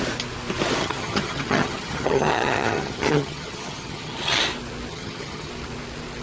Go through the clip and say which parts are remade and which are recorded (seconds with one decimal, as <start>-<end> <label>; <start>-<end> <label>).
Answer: 0.0-0.8 recorded; 0.8-4.4 remade; 4.4-4.9 recorded; 4.9-5.5 remade; 5.5-6.2 recorded

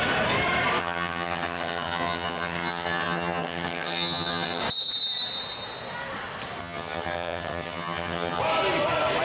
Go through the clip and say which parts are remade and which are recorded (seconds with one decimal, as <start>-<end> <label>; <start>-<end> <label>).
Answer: 0.0-0.8 recorded; 0.8-4.6 remade; 4.6-6.6 recorded; 6.6-8.4 remade; 8.4-9.2 recorded

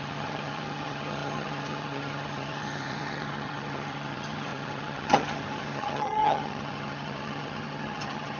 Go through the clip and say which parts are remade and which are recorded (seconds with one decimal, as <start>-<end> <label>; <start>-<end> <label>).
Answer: 0.0-8.4 remade

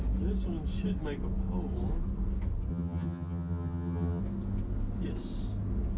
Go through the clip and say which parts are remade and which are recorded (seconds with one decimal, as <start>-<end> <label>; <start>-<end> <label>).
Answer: 0.0-2.7 recorded; 2.7-4.2 remade; 4.2-6.0 recorded

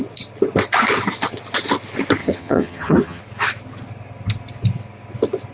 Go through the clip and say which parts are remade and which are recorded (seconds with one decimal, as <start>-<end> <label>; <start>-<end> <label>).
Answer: 0.0-2.2 recorded; 2.2-3.2 remade; 3.2-5.5 recorded